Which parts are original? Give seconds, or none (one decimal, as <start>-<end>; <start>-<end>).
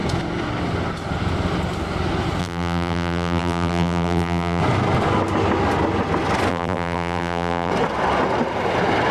0.0-2.4; 4.6-6.5; 7.7-9.1